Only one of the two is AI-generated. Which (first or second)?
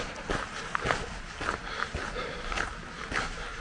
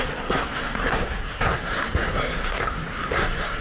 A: second